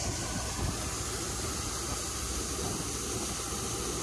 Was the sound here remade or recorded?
recorded